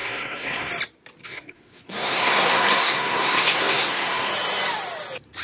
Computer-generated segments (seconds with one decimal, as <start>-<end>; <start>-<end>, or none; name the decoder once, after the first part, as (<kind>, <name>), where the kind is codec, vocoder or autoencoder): 0.0-0.7 (codec, SNAC); 1.2-4.3